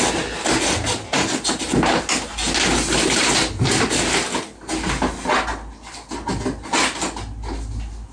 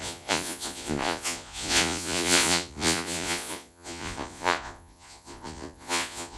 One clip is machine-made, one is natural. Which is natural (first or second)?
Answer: first